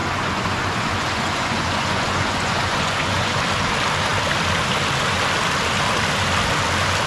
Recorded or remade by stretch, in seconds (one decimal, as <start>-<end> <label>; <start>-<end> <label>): 0.0-3.4 remade; 3.4-7.1 recorded